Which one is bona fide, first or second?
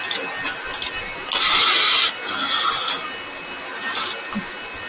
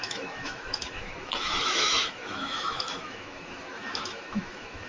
first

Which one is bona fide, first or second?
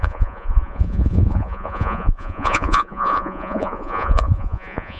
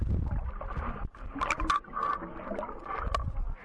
second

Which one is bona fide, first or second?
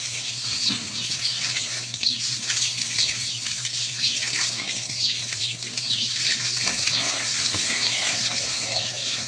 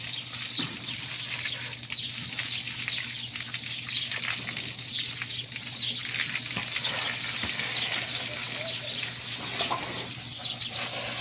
second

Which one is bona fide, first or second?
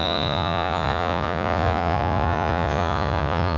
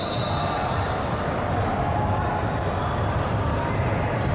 second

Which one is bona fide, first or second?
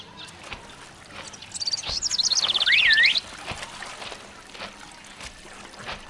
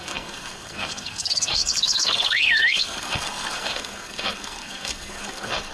first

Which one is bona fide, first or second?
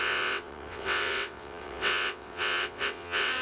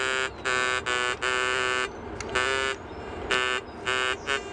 second